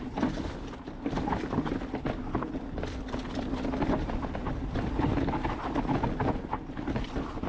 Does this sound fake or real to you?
real